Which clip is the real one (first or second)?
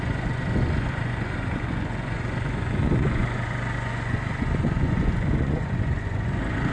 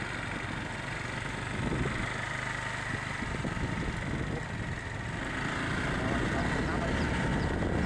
second